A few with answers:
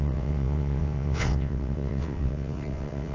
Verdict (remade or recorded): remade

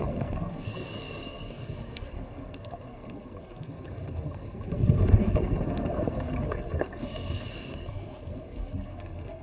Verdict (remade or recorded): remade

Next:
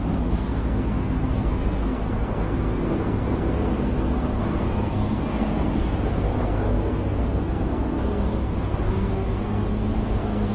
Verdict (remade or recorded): remade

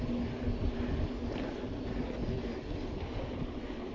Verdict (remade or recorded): recorded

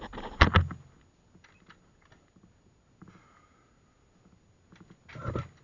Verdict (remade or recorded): recorded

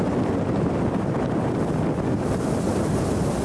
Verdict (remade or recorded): recorded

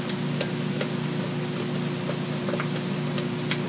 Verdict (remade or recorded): recorded